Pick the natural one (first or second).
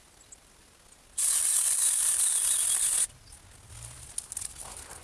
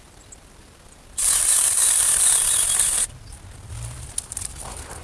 first